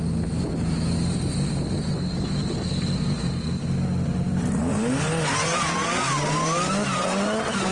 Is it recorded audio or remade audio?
recorded